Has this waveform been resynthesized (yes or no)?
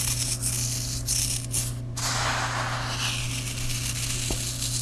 no